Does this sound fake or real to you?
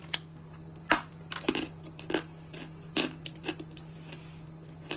real